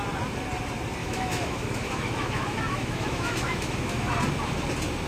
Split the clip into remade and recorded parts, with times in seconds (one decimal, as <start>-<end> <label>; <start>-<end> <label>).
0.0-1.0 recorded; 1.0-4.1 remade; 4.1-5.1 recorded